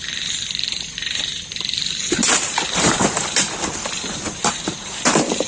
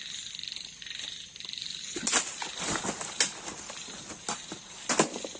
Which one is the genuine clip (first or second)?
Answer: second